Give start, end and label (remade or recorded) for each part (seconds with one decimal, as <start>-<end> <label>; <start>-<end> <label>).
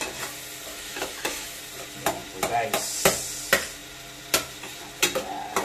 0.0-0.7 recorded; 0.7-1.6 remade; 1.6-5.6 recorded